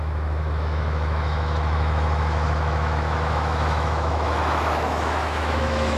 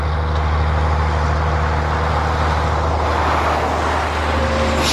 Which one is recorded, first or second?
second